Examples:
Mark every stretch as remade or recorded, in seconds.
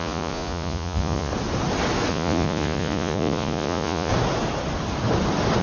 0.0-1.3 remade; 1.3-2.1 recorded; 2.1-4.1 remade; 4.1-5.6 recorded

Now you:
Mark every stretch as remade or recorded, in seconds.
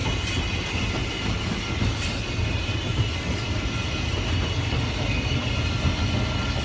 0.0-6.6 recorded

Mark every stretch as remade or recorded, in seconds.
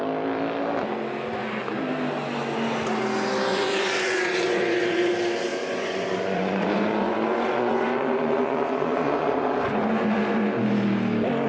0.0-3.5 recorded; 3.5-5.1 remade; 5.1-5.5 recorded; 5.5-10.5 remade; 10.5-11.5 recorded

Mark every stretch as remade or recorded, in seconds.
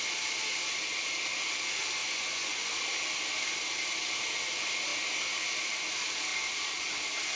0.0-2.0 recorded; 2.0-2.7 remade; 2.7-7.4 recorded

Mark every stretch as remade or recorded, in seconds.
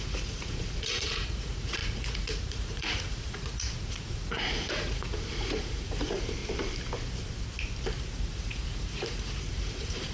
0.0-6.4 remade; 6.4-8.0 recorded; 8.0-10.1 remade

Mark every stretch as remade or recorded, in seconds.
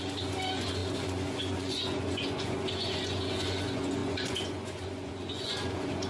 0.0-6.1 remade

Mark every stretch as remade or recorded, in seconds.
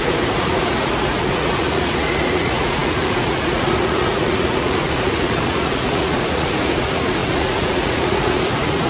0.0-8.9 remade